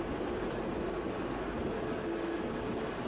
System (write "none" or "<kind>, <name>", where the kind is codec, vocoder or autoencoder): none